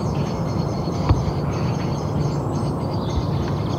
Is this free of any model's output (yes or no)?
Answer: yes